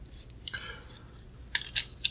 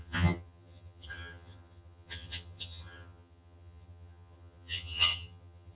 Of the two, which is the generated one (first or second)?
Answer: second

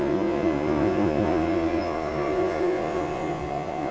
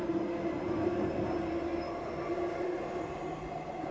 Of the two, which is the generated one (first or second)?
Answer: first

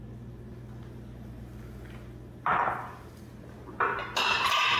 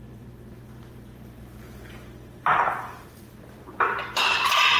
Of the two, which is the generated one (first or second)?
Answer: second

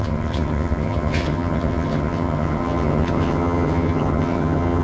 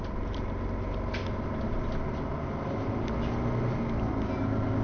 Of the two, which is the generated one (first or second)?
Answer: first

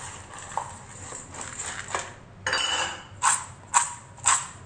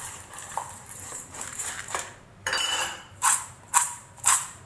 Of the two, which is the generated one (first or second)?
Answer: second